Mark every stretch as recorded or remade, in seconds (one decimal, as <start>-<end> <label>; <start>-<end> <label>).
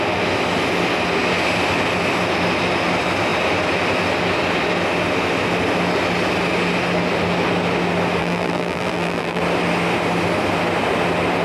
0.0-8.2 recorded; 8.2-9.4 remade; 9.4-11.4 recorded